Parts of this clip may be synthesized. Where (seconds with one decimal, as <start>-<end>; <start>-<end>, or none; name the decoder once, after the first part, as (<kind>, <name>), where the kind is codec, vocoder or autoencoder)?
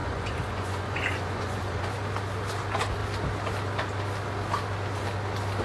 0.0-1.9 (vocoder, Vocos)